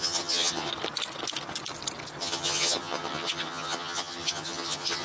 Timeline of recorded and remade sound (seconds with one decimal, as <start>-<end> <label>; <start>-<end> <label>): 0.0-0.7 remade; 0.7-2.2 recorded; 2.2-5.0 remade